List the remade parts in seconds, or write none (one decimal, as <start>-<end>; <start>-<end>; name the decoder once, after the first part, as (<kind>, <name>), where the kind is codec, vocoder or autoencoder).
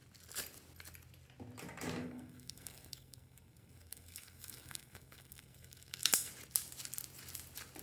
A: 2.0-6.3 (codec, SNAC)